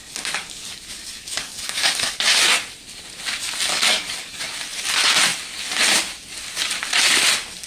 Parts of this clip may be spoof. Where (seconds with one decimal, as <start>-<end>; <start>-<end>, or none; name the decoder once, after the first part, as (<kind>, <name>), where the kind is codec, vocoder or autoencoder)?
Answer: 0.0-2.2 (codec, DAC); 3.7-4.4